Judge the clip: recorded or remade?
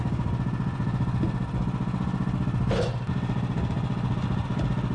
recorded